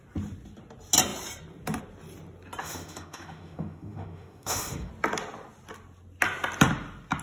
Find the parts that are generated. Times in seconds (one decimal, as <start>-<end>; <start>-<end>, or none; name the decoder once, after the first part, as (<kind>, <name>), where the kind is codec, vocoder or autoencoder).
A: 2.6-4.9 (autoencoder, DAC-VAE)